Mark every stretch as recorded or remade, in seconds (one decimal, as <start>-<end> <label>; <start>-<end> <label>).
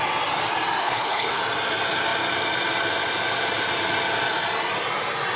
0.0-0.8 recorded; 0.8-1.4 remade; 1.4-5.4 recorded